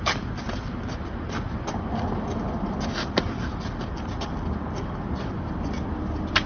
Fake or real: real